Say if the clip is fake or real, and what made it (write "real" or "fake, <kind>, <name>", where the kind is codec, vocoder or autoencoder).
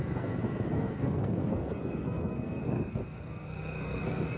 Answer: fake, codec, SNAC